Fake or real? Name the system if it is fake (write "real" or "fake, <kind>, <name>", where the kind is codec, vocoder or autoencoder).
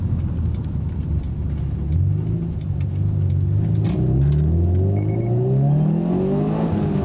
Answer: real